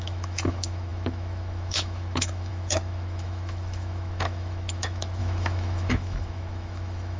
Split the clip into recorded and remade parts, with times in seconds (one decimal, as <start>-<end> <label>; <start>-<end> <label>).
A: 0.0-7.2 remade

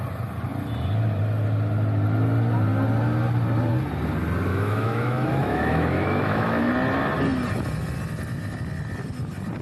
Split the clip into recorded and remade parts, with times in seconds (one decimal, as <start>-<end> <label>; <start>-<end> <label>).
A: 0.0-4.5 recorded; 4.5-6.7 remade; 6.7-9.6 recorded